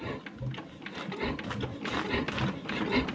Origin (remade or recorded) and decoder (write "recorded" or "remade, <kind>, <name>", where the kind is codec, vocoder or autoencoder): recorded